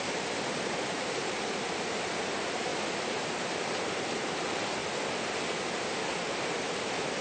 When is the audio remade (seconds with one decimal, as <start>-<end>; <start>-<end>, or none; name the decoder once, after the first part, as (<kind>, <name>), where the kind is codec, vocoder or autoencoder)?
0.0-2.7 (vocoder, BigVGAN v2); 3.4-4.8; 6.4-7.2

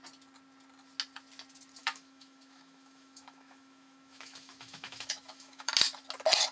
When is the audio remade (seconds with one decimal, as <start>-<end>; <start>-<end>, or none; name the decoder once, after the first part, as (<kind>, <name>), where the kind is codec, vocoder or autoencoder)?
1.8-5.7 (autoencoder, DAC-VAE)

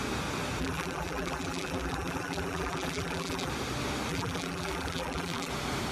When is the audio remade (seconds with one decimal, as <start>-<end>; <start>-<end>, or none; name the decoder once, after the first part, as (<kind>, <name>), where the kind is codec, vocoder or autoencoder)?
0.6-3.5 (vocoder, BigVGAN v2); 4.1-5.5

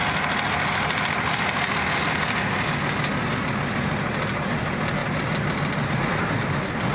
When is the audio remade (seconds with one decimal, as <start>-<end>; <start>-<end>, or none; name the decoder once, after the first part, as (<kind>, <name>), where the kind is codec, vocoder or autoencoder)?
none

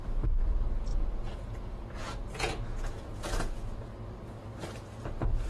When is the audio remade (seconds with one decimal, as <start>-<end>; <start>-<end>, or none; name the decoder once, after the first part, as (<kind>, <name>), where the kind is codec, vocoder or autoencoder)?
0.9-3.9 (vocoder, Vocos)